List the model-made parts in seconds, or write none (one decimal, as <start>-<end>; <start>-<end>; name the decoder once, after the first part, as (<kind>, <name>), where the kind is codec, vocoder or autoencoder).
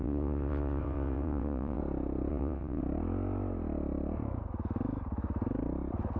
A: 0.0-1.8 (vocoder, WaveNeXt); 2.3-2.8